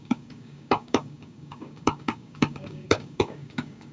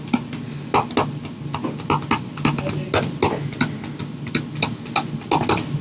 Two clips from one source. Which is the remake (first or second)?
first